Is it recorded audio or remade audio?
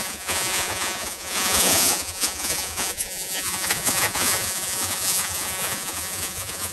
remade